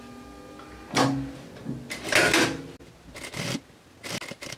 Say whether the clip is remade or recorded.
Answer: recorded